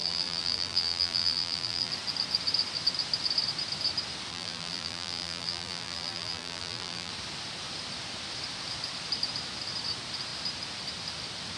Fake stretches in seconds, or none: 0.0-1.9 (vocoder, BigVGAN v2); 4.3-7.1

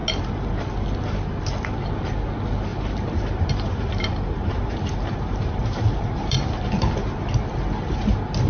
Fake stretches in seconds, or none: 2.7-6.9 (vocoder, BigVGAN v2)

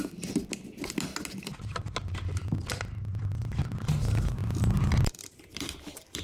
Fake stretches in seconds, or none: none

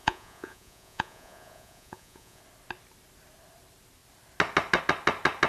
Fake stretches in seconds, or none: 0.0-2.4 (vocoder, Vocos)